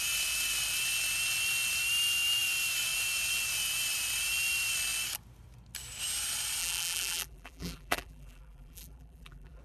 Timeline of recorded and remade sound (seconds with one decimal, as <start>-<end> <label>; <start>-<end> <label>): 0.0-6.6 recorded; 6.6-9.6 remade